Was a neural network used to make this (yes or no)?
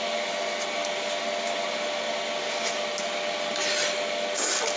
no